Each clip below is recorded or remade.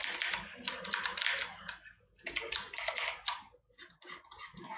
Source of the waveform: recorded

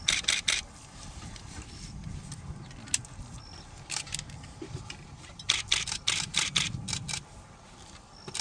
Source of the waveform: recorded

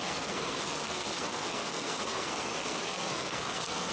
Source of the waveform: remade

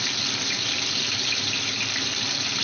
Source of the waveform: recorded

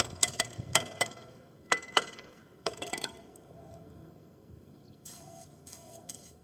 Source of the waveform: remade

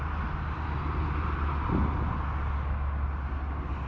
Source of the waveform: recorded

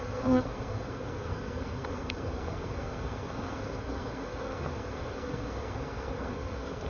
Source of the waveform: remade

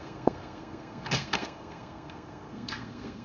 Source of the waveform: remade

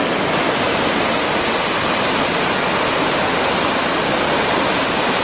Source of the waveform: recorded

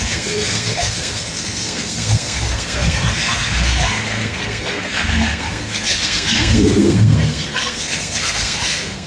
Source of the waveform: remade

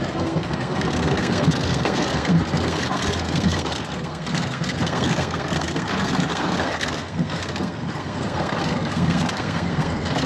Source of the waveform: remade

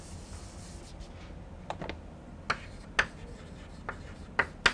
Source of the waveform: recorded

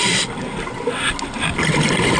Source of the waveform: recorded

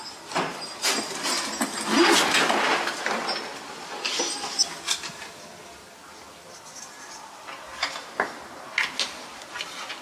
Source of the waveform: recorded